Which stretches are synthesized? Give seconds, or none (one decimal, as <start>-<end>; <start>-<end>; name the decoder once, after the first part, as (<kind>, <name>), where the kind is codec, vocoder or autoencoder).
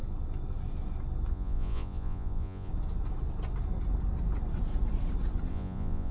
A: 1.3-2.7 (vocoder, Vocos); 5.5-6.1